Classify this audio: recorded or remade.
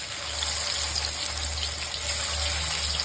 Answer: recorded